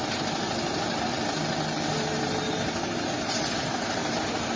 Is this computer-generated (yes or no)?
no